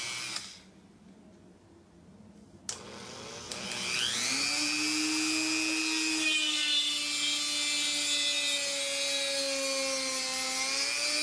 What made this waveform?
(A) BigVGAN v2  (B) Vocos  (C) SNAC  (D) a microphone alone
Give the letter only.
D